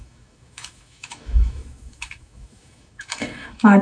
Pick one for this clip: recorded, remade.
remade